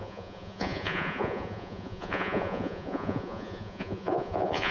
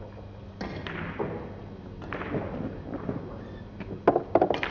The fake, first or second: first